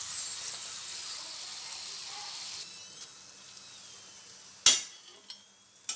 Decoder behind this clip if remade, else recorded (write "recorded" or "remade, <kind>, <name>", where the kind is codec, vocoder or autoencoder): recorded